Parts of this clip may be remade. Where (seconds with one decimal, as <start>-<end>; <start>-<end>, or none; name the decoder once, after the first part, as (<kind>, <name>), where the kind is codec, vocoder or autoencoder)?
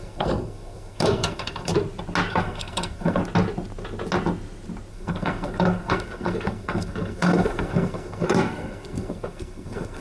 0.0-1.7 (codec, SNAC); 2.3-3.2; 4.9-10.0